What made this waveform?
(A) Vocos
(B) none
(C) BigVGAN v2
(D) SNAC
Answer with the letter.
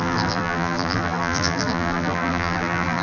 C